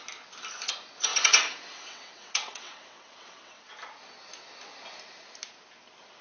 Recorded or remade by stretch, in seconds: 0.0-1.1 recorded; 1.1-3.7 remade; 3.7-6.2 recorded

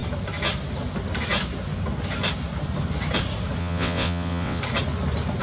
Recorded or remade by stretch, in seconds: 0.0-3.6 recorded; 3.6-4.6 remade; 4.6-5.4 recorded